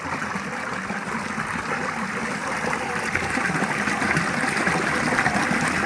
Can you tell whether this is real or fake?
real